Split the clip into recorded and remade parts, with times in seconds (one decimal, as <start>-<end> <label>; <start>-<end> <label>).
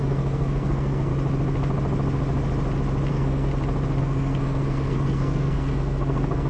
0.0-1.1 remade; 1.1-3.1 recorded; 3.1-3.5 remade; 3.5-4.0 recorded; 4.0-6.5 remade